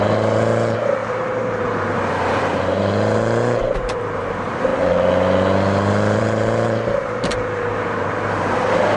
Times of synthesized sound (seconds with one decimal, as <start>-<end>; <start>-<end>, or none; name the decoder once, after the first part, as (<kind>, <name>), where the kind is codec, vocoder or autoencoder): 0.0-4.7 (vocoder, BigVGAN v2); 6.2-9.0